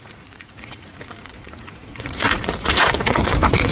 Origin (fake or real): fake